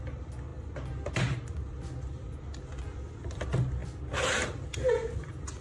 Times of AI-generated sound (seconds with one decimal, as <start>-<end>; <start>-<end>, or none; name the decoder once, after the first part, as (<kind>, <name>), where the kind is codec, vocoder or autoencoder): none